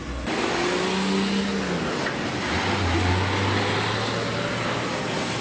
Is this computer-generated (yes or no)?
no